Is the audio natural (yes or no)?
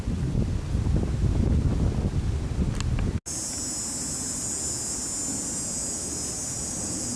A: yes